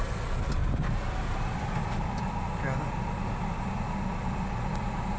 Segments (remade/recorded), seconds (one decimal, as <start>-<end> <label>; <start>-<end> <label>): 0.0-5.2 recorded